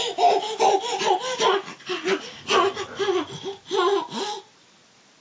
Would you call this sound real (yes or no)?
yes